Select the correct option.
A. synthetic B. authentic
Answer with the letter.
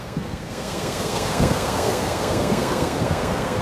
A